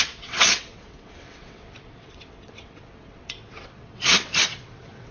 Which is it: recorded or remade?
remade